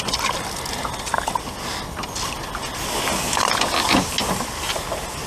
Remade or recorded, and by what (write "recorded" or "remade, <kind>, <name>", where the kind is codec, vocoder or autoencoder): recorded